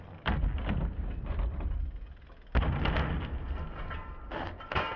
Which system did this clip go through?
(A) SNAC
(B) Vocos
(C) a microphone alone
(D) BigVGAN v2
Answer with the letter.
C